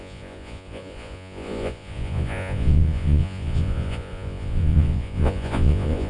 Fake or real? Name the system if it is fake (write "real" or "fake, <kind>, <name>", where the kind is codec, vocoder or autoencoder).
fake, vocoder, Vocos